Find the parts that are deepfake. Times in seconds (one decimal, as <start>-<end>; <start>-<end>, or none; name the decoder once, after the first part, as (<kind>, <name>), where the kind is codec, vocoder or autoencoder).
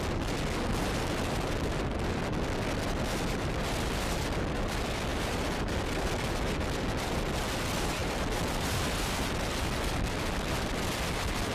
5.1-5.6 (vocoder, BigVGAN v2)